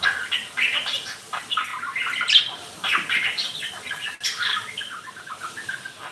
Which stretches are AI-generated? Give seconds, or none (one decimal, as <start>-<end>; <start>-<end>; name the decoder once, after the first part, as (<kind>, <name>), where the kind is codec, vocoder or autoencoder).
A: none